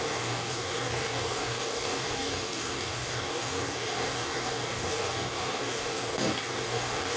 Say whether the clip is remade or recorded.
remade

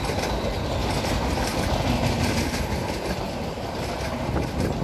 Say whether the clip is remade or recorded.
recorded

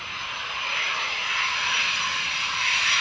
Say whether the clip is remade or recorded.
recorded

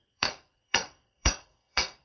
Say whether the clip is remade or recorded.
remade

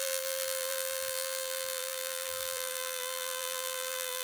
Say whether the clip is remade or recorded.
remade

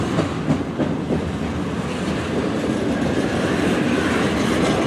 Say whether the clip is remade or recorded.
recorded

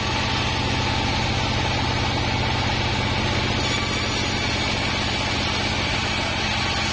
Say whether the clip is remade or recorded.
recorded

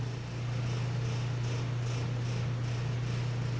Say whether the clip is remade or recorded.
recorded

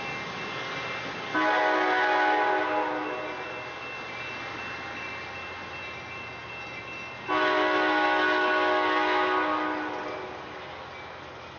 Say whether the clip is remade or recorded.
recorded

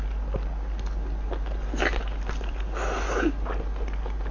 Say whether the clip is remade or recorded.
recorded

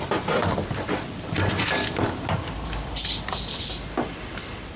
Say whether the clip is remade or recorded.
recorded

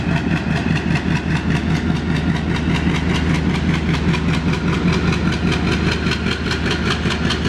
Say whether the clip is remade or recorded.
recorded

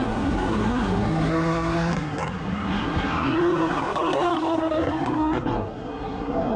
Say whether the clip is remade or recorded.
remade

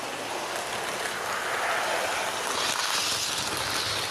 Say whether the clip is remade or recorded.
recorded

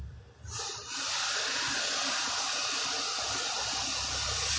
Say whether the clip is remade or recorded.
recorded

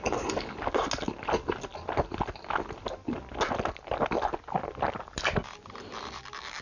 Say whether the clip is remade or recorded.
recorded